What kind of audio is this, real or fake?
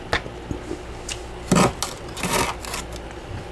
real